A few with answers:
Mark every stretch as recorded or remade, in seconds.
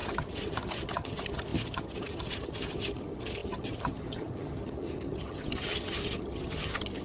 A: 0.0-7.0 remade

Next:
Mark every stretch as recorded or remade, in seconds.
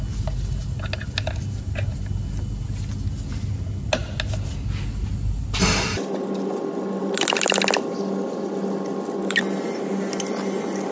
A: 0.0-10.9 recorded